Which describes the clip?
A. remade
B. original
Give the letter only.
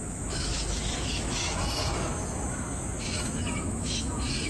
A